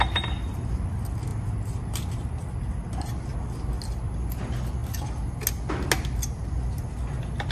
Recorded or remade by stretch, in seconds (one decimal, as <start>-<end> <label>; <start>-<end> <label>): 0.0-7.5 recorded